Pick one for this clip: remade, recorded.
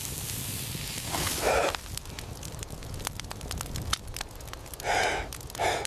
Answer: recorded